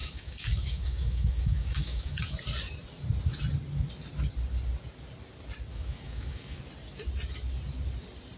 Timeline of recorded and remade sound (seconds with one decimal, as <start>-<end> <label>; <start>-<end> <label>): 0.0-2.2 remade; 2.2-5.7 recorded; 5.7-6.6 remade; 6.6-8.4 recorded